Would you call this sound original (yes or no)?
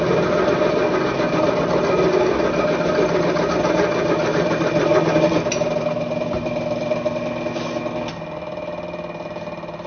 yes